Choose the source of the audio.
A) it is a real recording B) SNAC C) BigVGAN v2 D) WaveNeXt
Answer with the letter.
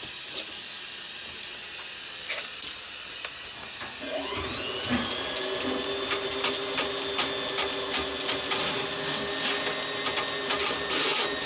A